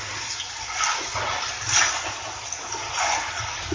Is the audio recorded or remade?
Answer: recorded